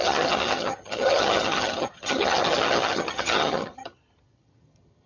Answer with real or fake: fake